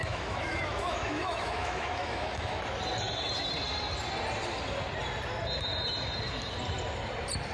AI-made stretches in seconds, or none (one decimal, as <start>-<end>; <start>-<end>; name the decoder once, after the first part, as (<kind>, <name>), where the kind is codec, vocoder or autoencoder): 0.0-2.6 (autoencoder, DAC-VAE)